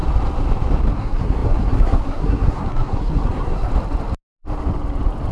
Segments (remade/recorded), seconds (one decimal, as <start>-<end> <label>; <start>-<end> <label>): 0.0-0.9 recorded; 0.9-3.7 remade; 3.7-5.3 recorded